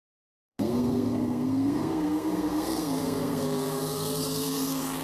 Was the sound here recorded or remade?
remade